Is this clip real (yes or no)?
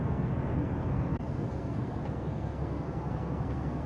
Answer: no